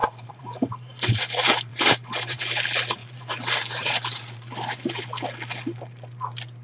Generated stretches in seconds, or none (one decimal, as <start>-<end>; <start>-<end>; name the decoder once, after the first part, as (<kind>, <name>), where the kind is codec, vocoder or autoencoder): 0.0-1.2 (vocoder, BigVGAN v2); 1.7-2.4; 3.0-5.0